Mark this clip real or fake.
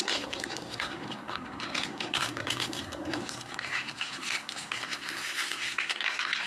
fake